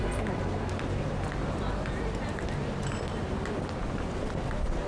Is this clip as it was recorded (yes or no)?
yes